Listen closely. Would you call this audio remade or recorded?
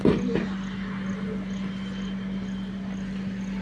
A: recorded